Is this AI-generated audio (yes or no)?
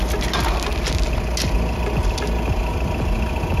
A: no